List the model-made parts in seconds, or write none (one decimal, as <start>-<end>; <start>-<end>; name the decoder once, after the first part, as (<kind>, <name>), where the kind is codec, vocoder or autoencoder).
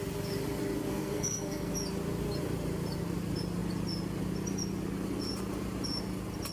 0.9-1.7 (codec, SNAC)